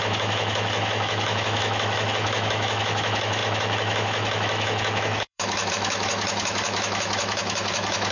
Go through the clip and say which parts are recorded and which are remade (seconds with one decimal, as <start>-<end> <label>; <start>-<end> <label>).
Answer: 0.0-8.1 remade

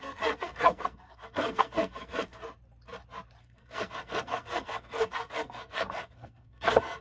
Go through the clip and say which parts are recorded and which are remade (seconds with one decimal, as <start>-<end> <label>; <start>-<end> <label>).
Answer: 0.0-2.4 remade; 2.4-3.4 recorded; 3.4-7.0 remade

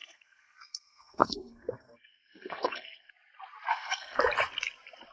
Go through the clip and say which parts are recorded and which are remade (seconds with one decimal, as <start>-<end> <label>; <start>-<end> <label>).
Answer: 0.0-3.1 remade; 3.1-3.7 recorded; 3.7-4.2 remade; 4.2-5.1 recorded